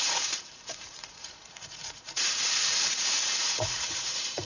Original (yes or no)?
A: no